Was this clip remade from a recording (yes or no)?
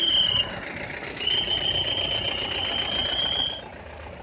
no